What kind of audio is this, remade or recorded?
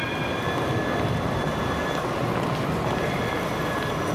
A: recorded